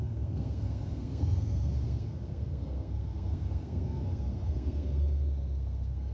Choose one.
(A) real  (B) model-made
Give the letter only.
B